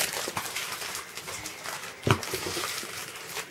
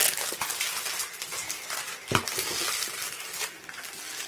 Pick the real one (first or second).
second